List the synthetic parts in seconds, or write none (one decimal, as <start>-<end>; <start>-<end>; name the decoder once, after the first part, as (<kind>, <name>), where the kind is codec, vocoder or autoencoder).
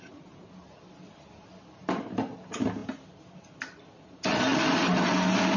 none